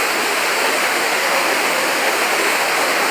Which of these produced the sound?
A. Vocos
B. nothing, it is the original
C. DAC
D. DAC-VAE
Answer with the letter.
D